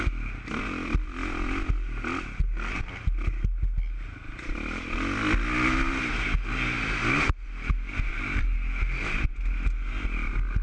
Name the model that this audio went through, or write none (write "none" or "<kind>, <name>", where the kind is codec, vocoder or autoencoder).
none